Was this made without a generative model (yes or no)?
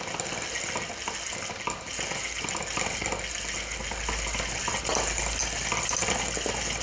yes